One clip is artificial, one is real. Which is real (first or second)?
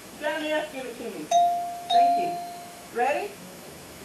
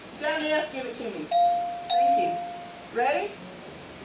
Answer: second